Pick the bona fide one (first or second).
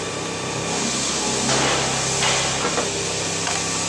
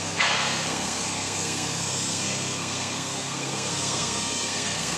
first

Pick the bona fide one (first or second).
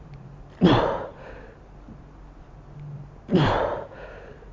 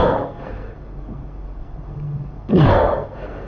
first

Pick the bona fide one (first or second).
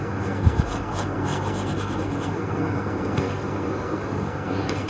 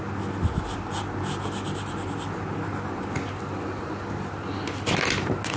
second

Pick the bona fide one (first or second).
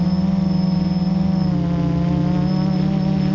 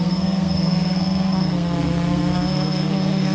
first